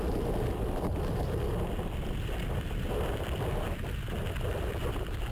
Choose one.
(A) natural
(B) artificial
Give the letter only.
A